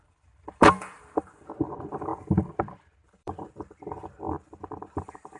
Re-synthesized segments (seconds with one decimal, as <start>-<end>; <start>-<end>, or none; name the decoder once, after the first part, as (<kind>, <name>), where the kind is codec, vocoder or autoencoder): 0.0-2.1 (vocoder, BigVGAN v2); 3.1-5.4